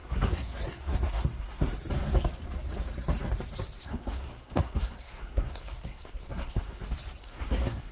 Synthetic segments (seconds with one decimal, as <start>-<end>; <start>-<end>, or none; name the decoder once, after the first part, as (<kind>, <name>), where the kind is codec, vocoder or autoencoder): 0.0-1.7 (codec, SNAC); 3.8-6.8; 7.2-7.9